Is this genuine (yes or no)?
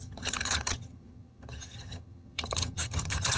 no